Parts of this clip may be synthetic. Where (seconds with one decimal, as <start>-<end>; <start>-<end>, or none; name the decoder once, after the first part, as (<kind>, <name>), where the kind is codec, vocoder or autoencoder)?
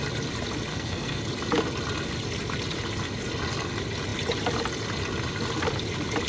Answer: 0.7-1.2 (codec, SNAC)